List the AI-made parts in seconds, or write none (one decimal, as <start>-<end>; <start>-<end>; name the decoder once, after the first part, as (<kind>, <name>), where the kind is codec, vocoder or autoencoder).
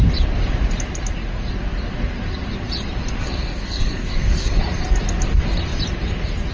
3.2-4.6 (codec, SNAC)